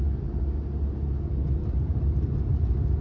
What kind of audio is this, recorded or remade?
recorded